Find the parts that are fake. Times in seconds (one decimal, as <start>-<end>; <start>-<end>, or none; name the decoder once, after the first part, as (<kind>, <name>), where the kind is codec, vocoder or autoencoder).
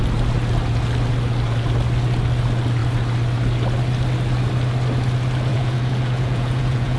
5.5-7.0 (vocoder, Vocos)